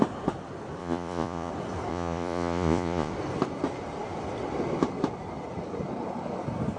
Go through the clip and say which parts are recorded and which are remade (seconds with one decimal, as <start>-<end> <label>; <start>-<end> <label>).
0.0-0.8 recorded; 0.8-1.5 remade; 1.5-1.9 recorded; 1.9-3.1 remade; 3.1-6.8 recorded